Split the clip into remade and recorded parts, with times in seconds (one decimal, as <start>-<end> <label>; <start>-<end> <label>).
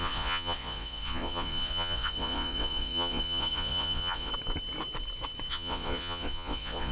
0.0-4.3 remade; 4.3-5.5 recorded; 5.5-6.9 remade